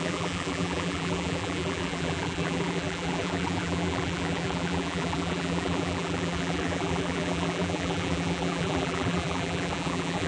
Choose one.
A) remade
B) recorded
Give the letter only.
A